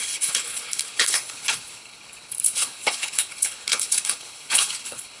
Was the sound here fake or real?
fake